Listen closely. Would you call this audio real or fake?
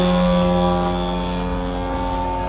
real